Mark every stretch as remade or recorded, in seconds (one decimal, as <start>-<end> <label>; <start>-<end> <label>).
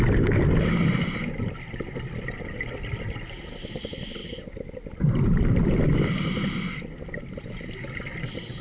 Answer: 0.0-8.6 recorded